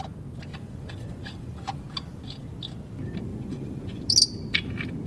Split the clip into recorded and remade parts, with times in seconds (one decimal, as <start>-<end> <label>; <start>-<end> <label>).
0.0-0.5 recorded; 0.5-1.8 remade; 1.8-3.3 recorded; 3.3-4.0 remade; 4.0-5.1 recorded